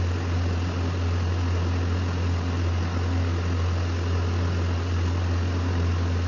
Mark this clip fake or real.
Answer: real